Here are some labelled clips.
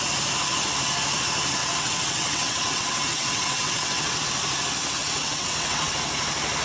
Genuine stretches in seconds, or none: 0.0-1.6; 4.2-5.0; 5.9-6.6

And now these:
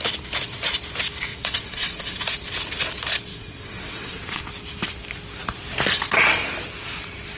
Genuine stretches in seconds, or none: 0.0-1.3; 2.2-3.3; 4.4-7.4

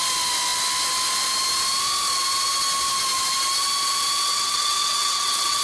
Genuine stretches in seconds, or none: 0.0-4.3